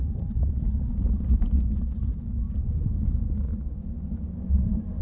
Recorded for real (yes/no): no